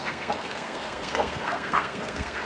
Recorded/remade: remade